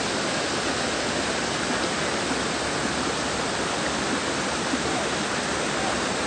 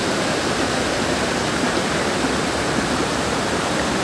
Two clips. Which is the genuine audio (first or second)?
first